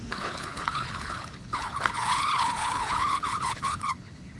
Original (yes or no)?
no